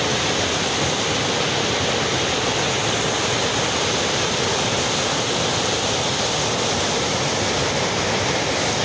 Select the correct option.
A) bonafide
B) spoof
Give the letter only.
A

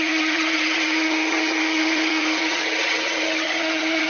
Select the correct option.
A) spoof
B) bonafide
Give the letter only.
A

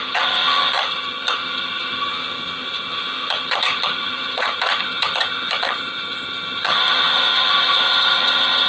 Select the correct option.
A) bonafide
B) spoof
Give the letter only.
B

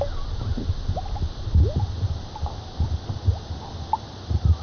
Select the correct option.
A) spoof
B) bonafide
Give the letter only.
B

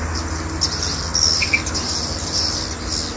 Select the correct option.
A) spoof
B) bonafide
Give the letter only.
B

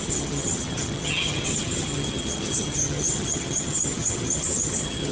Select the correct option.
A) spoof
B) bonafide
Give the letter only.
A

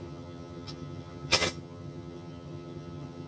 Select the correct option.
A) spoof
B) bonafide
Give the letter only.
A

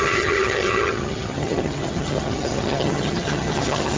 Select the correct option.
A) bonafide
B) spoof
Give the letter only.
B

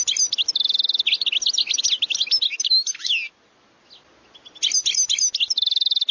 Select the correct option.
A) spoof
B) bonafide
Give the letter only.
B